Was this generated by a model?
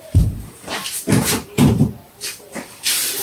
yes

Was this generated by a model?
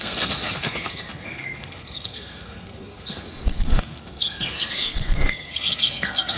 yes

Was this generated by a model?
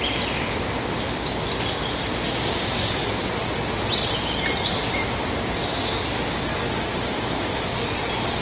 no